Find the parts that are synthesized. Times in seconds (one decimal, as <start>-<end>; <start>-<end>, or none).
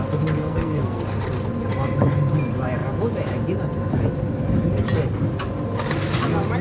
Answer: 0.4-1.0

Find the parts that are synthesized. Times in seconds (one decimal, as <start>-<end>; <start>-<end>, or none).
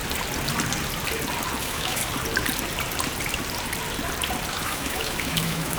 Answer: 1.6-2.0; 4.5-5.8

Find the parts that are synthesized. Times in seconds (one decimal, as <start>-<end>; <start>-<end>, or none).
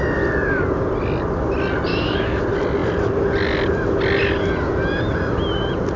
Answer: 1.9-2.4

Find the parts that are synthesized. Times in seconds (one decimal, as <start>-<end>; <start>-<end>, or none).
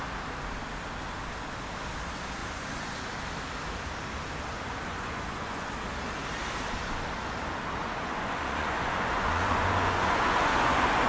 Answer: 2.4-3.1; 4.5-5.7; 7.8-11.1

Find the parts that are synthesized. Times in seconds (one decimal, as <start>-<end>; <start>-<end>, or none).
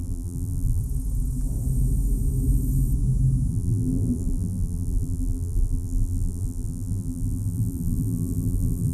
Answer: 0.0-0.8; 3.5-8.9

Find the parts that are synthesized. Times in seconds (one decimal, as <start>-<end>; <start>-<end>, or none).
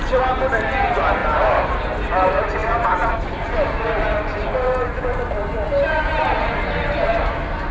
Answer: 2.6-4.0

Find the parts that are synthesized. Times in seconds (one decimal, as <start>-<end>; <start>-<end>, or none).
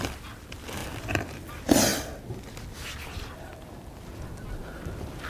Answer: none